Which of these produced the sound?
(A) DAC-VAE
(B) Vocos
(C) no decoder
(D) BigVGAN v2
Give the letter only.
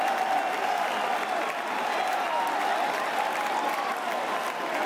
C